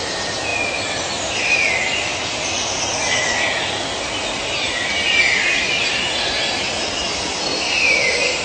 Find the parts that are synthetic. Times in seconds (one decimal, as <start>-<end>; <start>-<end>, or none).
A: none